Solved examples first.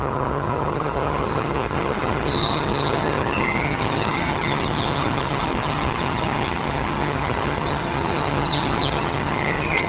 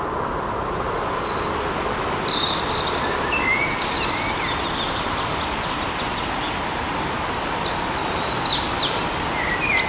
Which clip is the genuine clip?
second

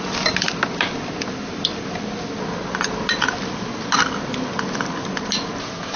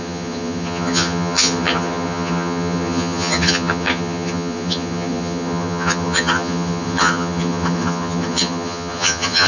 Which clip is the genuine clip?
first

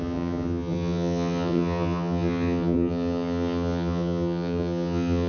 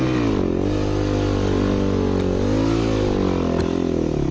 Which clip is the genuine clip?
second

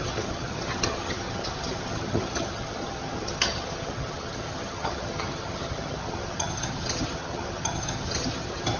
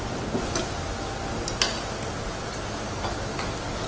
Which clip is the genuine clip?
second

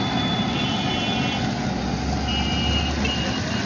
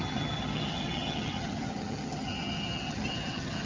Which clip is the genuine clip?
first